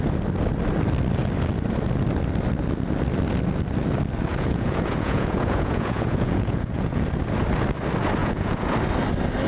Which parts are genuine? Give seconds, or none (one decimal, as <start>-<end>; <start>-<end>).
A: 0.0-4.3; 7.1-8.2; 8.7-9.5